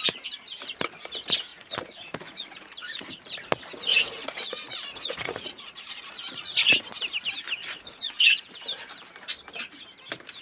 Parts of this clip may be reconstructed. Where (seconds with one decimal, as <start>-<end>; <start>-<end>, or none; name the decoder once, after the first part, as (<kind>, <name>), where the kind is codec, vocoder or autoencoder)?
1.5-3.2 (vocoder, Vocos); 3.9-6.7; 7.6-8.4